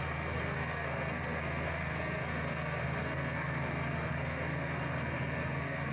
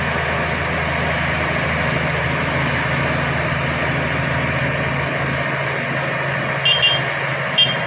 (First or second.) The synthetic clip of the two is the first